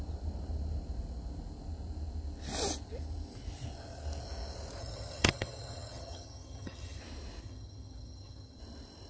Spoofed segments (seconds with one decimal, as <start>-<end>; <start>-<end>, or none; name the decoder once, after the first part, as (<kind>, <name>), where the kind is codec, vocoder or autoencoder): 4.8-7.0 (vocoder, HiFi-GAN); 7.4-8.6